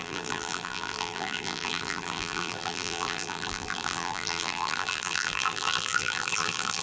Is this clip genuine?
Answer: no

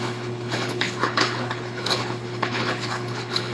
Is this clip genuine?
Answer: no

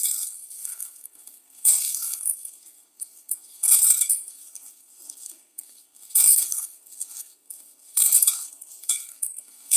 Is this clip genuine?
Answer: no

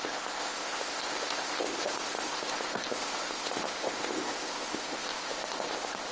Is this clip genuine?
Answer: no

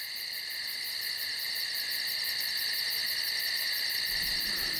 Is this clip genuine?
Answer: yes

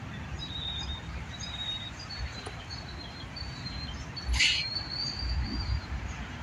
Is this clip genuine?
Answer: no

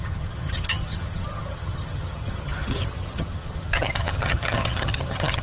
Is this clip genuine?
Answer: no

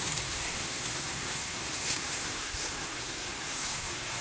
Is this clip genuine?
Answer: no